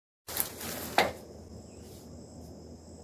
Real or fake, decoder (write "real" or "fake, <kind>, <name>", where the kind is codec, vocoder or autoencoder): real